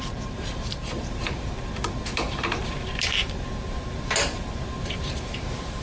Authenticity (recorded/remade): remade